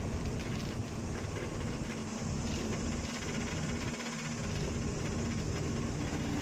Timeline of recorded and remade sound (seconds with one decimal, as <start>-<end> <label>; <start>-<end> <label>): 0.0-6.4 recorded